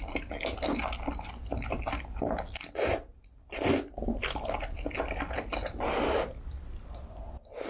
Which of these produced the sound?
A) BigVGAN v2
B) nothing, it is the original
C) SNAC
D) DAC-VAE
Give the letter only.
B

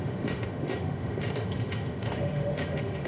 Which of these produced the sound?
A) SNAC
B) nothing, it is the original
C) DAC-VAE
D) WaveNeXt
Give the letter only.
C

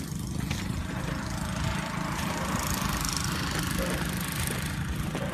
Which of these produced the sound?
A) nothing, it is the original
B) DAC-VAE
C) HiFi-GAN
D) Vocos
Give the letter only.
A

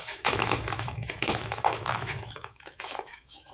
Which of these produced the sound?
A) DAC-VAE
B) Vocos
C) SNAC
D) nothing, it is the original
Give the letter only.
A